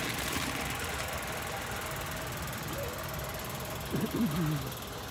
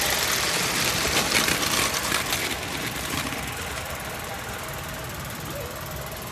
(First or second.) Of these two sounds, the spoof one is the second